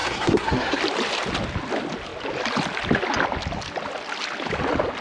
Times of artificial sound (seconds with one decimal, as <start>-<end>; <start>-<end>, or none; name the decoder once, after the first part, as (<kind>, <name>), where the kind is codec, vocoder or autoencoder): 0.0-0.8 (codec, SNAC)